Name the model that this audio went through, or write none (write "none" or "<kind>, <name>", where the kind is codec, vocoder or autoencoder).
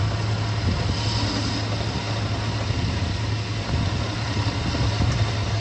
none